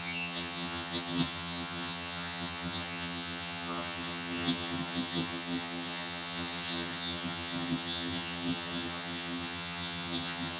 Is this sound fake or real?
fake